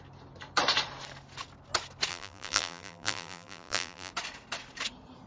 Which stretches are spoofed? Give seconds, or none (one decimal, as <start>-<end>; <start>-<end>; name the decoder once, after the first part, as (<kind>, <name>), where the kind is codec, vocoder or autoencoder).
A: 2.1-4.1 (vocoder, BigVGAN v2)